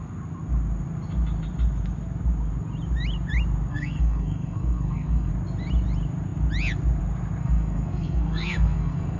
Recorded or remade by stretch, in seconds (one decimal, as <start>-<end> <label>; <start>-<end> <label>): 0.0-3.7 recorded; 3.7-5.3 remade; 5.3-7.4 recorded; 7.4-9.2 remade